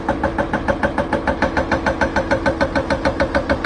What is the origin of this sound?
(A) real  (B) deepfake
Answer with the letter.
A